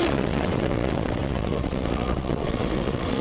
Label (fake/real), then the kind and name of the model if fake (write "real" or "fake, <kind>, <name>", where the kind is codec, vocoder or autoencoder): fake, vocoder, WaveNeXt